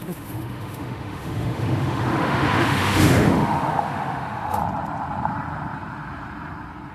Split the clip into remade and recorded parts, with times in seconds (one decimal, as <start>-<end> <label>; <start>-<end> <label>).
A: 0.0-4.6 remade; 4.6-6.9 recorded